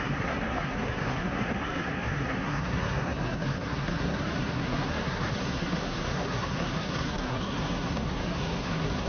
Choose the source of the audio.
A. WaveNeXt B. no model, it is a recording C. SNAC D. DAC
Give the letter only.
C